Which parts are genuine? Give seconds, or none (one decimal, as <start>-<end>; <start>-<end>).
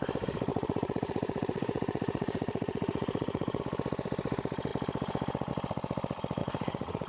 0.0-0.5; 3.6-6.4